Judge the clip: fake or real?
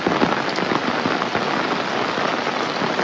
real